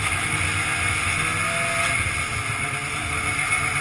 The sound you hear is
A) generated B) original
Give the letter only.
B